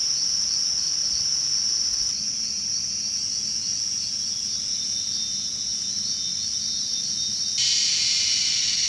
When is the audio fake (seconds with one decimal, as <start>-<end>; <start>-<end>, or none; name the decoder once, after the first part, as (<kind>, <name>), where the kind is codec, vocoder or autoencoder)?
none

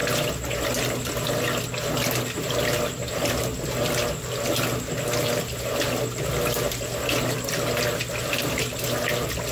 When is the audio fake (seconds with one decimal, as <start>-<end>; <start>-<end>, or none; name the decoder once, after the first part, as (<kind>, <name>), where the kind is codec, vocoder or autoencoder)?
none

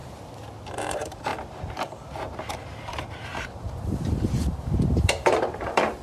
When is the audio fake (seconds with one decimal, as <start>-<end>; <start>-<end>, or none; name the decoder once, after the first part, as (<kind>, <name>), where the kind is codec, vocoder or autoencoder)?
0.7-1.3 (vocoder, BigVGAN v2); 2.5-6.0

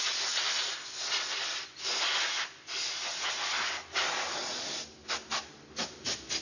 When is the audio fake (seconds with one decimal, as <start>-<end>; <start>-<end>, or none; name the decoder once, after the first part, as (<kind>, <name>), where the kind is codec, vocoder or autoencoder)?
none

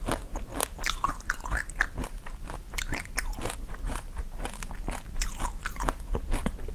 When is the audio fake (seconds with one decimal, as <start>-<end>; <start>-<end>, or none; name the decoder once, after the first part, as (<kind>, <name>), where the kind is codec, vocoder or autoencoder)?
0.5-1.1 (vocoder, BigVGAN v2); 2.0-4.7

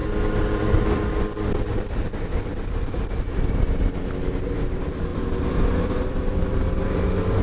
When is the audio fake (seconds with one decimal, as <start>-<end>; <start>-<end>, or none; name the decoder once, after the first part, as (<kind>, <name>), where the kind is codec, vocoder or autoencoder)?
4.4-7.4 (vocoder, BigVGAN v2)

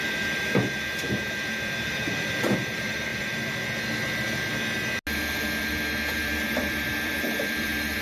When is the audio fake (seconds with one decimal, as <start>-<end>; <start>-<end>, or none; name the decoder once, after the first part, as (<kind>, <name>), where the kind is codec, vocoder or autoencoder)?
0.0-3.1 (vocoder, BigVGAN v2); 6.2-8.0

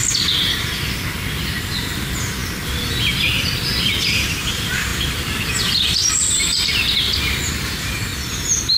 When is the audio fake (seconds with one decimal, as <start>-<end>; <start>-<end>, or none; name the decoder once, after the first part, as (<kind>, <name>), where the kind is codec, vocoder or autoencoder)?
1.6-2.4 (vocoder, BigVGAN v2); 4.0-8.1